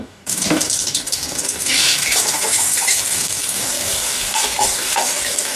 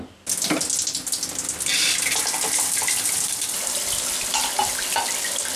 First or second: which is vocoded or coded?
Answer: first